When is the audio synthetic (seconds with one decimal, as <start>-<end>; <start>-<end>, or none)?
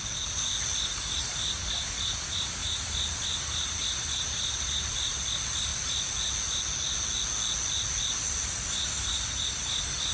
none